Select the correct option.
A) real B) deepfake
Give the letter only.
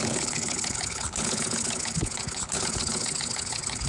B